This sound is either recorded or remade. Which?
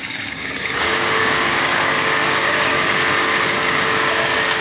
remade